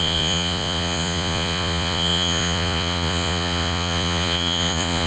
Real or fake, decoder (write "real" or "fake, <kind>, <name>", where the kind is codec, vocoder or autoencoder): fake, vocoder, Vocos